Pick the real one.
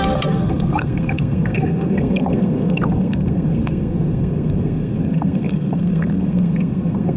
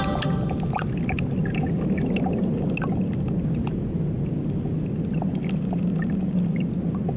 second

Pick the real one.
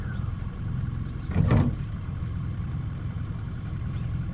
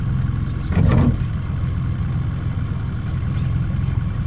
second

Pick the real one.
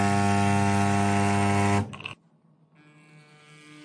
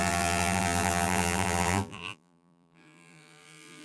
first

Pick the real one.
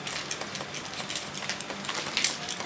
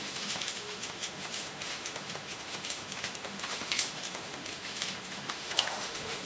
first